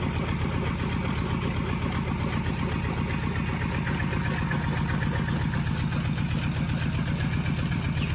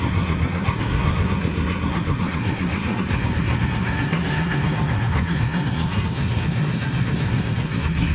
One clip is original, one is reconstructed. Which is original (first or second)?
first